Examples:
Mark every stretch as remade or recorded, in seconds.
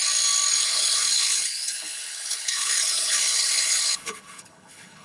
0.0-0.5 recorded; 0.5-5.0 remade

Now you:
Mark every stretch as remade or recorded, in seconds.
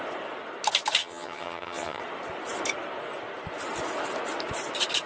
0.0-1.0 recorded; 1.0-2.0 remade; 2.0-5.1 recorded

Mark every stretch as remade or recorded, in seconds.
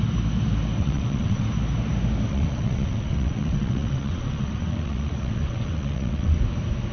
0.0-0.8 recorded; 0.8-1.4 remade; 1.4-2.3 recorded; 2.3-6.4 remade; 6.4-6.9 recorded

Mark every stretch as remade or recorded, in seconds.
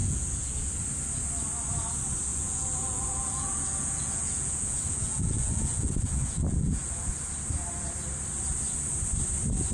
0.0-0.7 remade; 0.7-2.3 recorded; 2.3-7.1 remade; 7.1-9.7 recorded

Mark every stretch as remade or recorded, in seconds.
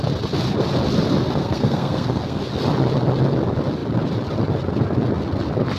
0.0-1.4 recorded; 1.4-2.4 remade; 2.4-5.8 recorded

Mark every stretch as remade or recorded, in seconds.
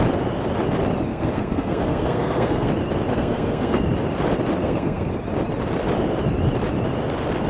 0.0-1.1 recorded; 1.1-2.7 remade; 2.7-3.1 recorded; 3.1-3.8 remade; 3.8-4.6 recorded; 4.6-5.1 remade; 5.1-7.5 recorded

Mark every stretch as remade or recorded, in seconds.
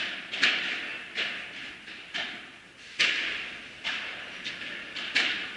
0.0-5.6 recorded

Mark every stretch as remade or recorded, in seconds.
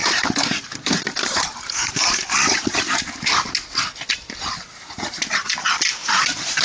0.0-3.5 remade; 3.5-4.7 recorded; 4.7-5.3 remade; 5.3-6.0 recorded; 6.0-6.6 remade